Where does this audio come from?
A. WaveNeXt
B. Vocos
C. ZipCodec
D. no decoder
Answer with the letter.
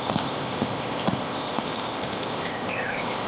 C